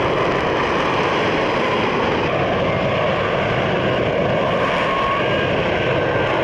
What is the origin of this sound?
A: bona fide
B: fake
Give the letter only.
A